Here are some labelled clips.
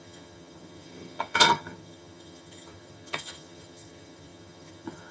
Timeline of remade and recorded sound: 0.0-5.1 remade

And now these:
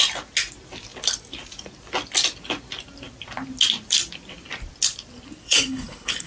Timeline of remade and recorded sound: 0.0-5.4 recorded; 5.4-6.3 remade

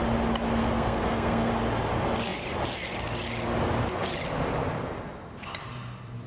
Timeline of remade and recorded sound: 0.0-0.6 recorded; 0.6-1.5 remade; 1.5-6.3 recorded

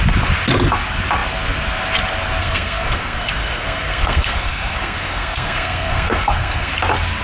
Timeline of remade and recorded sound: 0.0-2.4 recorded; 2.4-6.7 remade; 6.7-7.2 recorded

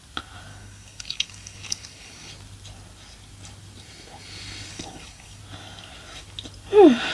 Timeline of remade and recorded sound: 0.0-0.5 recorded; 0.5-2.3 remade; 2.3-4.7 recorded; 4.7-5.4 remade; 5.4-7.1 recorded